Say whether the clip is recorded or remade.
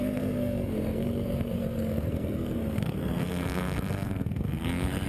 remade